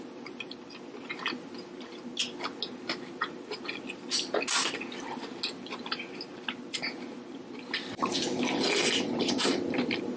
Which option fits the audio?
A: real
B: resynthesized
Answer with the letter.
A